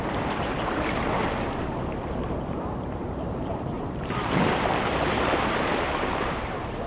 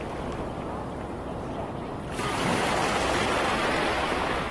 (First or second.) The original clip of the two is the second